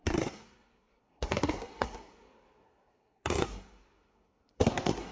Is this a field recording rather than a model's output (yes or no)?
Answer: no